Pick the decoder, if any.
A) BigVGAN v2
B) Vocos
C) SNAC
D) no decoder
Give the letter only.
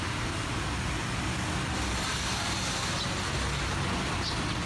D